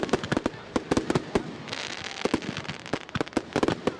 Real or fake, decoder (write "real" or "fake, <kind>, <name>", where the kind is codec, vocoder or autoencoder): real